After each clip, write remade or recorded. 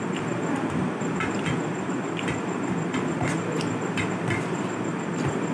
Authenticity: recorded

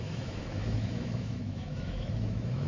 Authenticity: remade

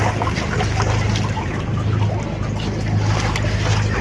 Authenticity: recorded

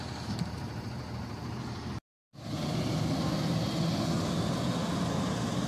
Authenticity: recorded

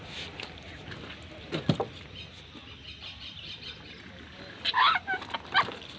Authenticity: recorded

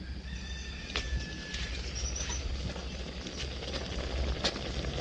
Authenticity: recorded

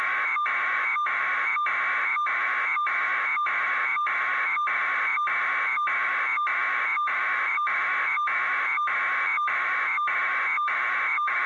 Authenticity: remade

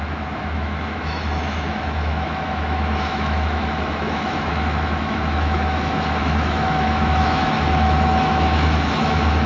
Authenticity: remade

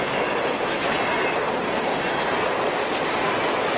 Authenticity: recorded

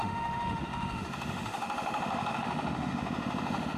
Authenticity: remade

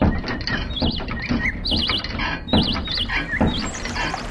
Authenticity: recorded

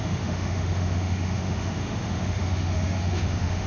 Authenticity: remade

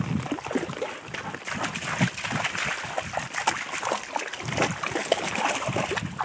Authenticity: recorded